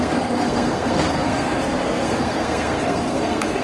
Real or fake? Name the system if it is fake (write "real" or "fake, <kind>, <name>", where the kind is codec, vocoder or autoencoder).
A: fake, codec, SNAC